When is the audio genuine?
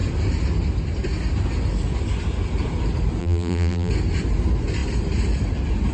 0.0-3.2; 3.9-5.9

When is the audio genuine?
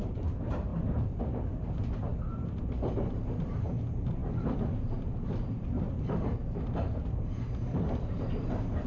2.1-3.5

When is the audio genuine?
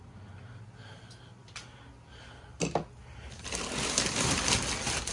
0.0-5.1